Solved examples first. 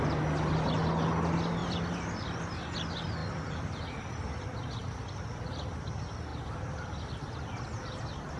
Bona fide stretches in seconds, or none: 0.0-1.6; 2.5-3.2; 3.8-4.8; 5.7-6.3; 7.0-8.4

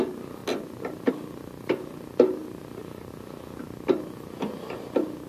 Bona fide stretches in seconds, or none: 0.0-2.4; 3.1-5.3

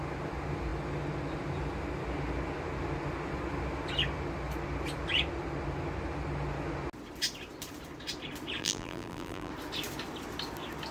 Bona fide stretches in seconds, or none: 0.0-8.6; 9.5-10.9